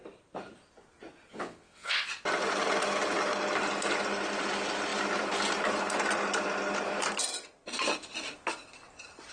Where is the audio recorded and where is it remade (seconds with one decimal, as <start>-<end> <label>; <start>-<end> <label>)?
0.0-1.3 recorded; 1.3-2.1 remade; 2.1-9.3 recorded